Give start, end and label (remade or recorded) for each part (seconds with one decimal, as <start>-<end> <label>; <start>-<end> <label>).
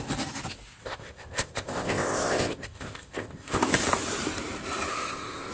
0.0-0.8 recorded; 0.8-3.7 remade; 3.7-4.9 recorded; 4.9-5.5 remade